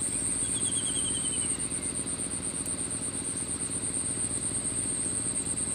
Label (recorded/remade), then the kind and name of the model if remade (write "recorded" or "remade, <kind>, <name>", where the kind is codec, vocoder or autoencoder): recorded